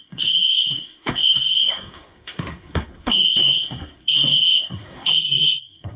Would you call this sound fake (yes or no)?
yes